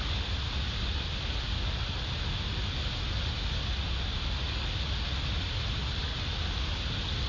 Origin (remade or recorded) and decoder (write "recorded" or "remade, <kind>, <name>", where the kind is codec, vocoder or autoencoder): recorded